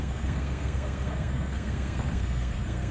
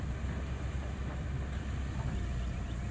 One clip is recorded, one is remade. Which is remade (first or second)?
first